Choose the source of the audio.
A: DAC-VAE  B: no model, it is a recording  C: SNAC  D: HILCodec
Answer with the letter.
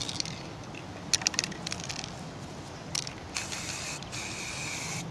B